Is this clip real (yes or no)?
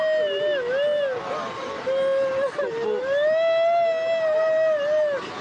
yes